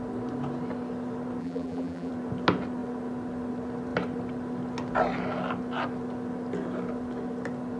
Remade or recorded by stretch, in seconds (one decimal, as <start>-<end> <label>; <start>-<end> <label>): 0.0-1.4 recorded; 1.4-2.1 remade; 2.1-7.8 recorded